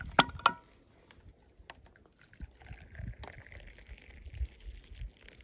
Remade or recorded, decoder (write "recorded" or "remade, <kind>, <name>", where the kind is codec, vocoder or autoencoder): recorded